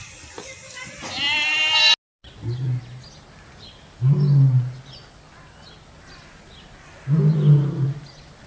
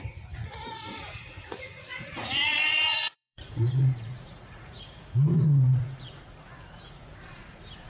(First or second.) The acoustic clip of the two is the first